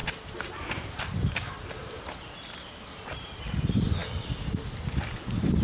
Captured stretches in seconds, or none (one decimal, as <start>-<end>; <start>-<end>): none